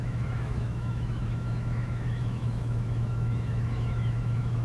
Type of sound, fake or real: fake